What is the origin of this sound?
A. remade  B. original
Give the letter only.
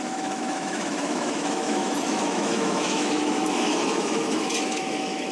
A